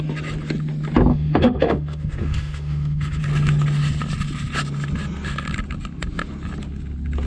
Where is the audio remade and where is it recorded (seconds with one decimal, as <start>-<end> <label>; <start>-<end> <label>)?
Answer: 0.0-1.1 recorded; 1.1-3.2 remade; 3.2-7.3 recorded